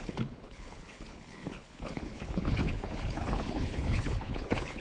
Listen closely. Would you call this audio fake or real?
fake